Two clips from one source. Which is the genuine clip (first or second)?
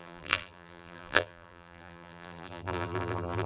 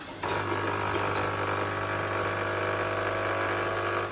second